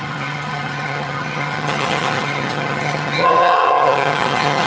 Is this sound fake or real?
fake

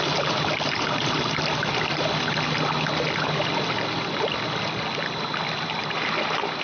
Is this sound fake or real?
real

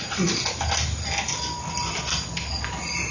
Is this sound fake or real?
real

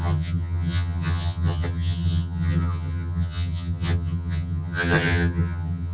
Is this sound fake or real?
fake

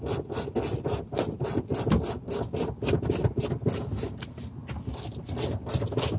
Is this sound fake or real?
real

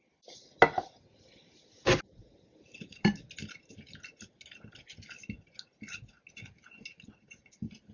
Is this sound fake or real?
real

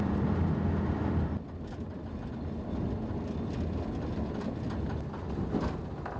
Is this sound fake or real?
real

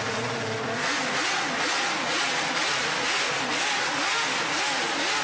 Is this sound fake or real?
real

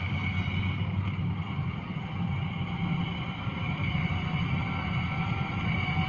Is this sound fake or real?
real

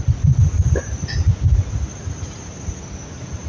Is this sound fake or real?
real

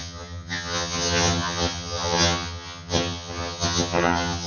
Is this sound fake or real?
fake